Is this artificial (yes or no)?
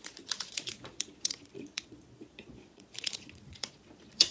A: yes